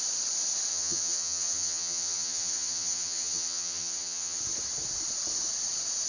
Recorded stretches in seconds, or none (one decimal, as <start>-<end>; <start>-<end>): 0.0-0.7; 4.4-6.1